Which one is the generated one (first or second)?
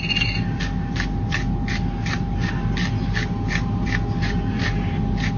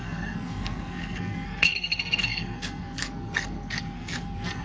second